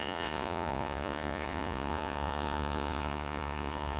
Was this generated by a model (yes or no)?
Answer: yes